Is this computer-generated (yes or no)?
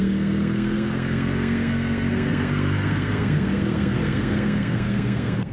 yes